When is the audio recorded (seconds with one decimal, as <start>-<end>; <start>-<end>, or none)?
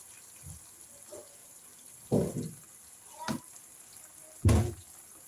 0.0-5.3